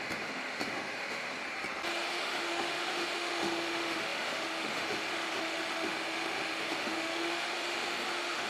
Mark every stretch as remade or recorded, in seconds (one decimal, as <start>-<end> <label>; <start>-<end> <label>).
0.0-1.4 remade; 1.4-2.1 recorded; 2.1-8.5 remade